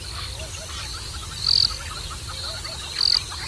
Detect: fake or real real